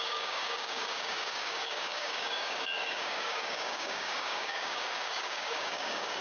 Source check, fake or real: fake